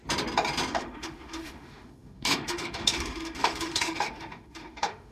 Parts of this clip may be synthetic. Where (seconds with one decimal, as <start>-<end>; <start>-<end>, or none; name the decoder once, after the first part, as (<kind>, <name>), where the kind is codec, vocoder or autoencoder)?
0.7-5.1 (autoencoder, DAC-VAE)